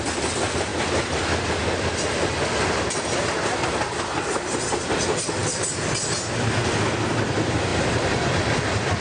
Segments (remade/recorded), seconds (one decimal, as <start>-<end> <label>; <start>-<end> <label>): 0.0-7.7 recorded; 7.7-8.3 remade; 8.3-9.0 recorded